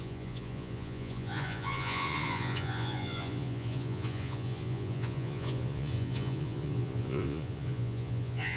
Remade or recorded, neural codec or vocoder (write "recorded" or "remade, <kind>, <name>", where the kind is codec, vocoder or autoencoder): remade, vocoder, Vocos